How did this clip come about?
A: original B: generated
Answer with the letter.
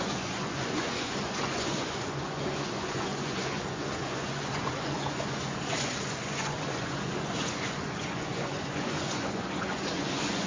B